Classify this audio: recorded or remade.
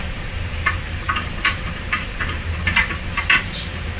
remade